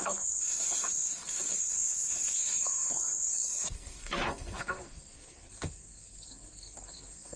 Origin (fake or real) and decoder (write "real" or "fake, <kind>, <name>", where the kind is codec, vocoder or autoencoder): fake, codec, SNAC